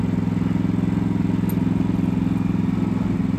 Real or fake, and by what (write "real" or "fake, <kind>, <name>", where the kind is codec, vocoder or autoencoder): real